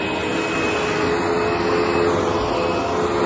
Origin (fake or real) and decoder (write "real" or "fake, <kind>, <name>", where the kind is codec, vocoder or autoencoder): real